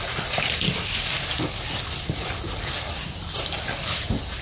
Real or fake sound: real